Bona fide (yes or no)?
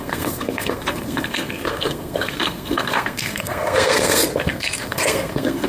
no